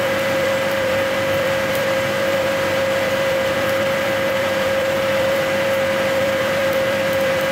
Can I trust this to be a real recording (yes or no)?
no